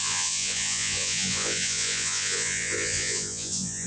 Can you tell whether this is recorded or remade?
remade